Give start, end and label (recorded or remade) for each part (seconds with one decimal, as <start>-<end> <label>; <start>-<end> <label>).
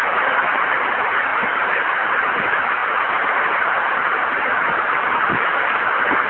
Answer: 0.0-6.3 recorded